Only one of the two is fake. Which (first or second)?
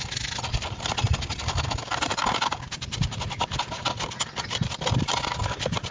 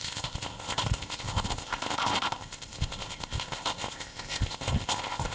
second